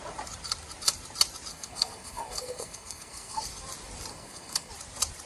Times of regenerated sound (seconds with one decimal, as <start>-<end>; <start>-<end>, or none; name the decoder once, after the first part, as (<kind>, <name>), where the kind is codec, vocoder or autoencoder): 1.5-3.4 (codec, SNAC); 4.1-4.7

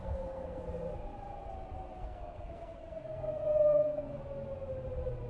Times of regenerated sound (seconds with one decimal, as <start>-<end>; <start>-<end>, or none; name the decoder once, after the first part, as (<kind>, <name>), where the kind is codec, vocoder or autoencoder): 0.0-0.6 (codec, SNAC); 2.0-4.2

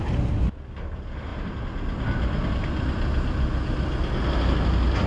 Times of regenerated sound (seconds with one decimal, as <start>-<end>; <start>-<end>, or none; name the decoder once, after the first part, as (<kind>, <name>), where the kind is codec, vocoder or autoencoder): none